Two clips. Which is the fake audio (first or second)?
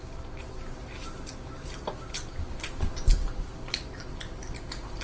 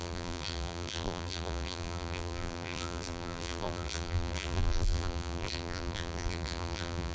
second